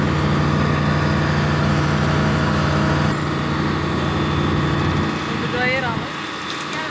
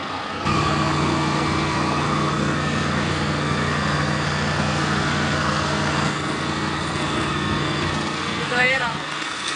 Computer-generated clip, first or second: second